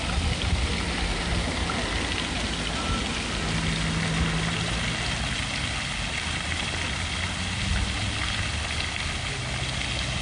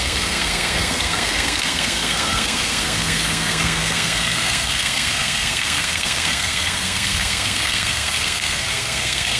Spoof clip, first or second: second